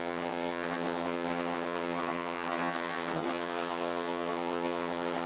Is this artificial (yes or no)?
yes